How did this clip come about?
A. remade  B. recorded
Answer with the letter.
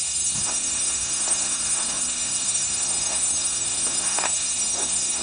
A